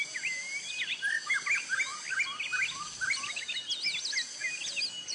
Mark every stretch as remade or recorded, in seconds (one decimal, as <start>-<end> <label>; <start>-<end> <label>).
0.0-5.1 recorded